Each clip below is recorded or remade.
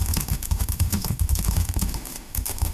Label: remade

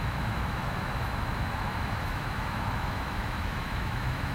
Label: remade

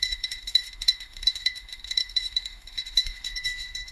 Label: remade